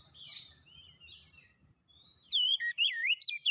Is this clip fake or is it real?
fake